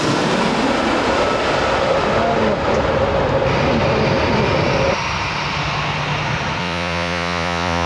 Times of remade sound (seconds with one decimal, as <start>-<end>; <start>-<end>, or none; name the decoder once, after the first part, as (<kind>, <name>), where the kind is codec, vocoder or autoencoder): 6.6-7.9 (vocoder, Vocos)